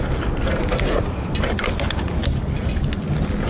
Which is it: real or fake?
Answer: real